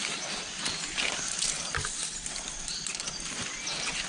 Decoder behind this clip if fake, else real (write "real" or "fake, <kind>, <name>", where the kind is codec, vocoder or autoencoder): real